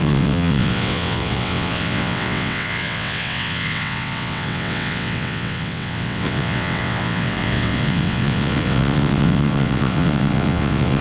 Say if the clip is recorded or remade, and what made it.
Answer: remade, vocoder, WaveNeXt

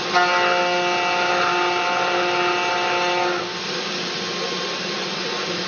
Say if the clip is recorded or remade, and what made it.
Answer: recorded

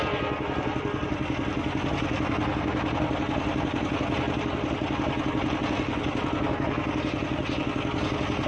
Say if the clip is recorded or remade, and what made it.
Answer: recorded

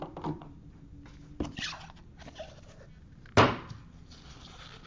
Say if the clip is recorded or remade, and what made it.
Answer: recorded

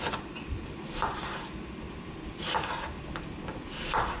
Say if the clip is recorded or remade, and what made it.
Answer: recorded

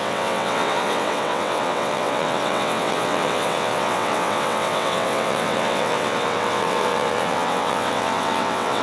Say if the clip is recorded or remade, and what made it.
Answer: remade, vocoder, WaveNeXt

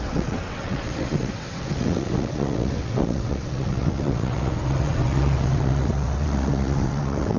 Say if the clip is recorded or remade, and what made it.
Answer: remade, vocoder, WaveNeXt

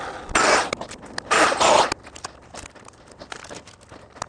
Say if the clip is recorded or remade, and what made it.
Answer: recorded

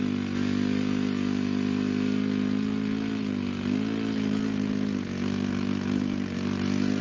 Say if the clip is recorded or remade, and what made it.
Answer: recorded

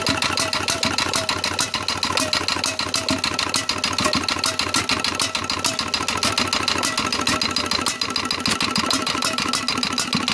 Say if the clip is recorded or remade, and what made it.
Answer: recorded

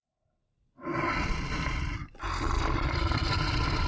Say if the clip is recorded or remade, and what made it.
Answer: recorded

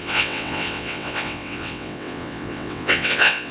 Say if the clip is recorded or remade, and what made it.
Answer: remade, vocoder, WaveNeXt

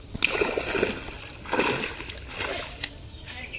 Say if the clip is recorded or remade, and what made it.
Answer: recorded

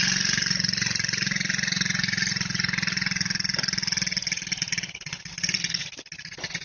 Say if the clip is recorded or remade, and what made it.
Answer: recorded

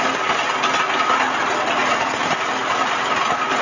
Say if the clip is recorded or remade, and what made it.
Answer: recorded